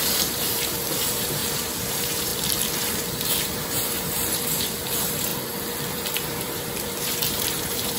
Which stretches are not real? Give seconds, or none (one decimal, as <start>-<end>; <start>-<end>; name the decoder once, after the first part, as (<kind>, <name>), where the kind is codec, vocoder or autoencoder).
0.0-2.3 (vocoder, BigVGAN v2); 3.4-5.3; 5.9-8.0